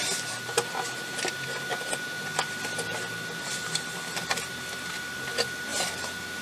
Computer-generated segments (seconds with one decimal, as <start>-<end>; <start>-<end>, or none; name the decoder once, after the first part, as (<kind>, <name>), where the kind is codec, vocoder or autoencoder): none